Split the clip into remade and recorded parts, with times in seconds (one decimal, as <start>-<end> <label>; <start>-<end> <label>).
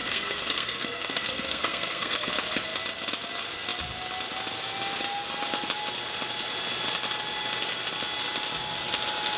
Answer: 0.0-2.3 remade; 2.3-9.4 recorded